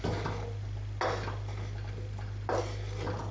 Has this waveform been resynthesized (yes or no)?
no